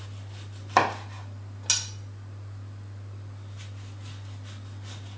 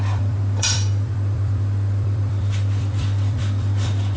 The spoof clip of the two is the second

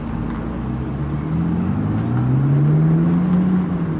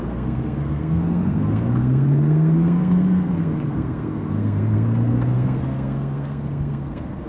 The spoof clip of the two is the second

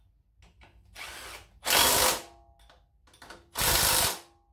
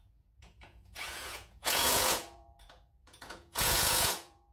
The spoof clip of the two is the second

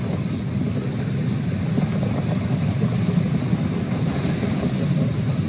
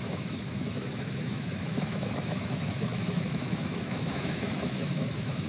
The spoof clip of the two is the second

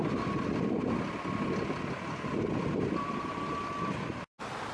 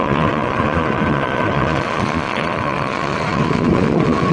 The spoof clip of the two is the second